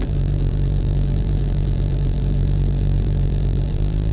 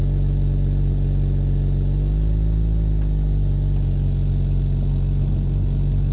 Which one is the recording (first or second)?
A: second